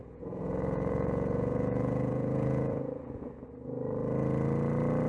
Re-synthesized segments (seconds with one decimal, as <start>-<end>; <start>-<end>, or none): 0.0-3.1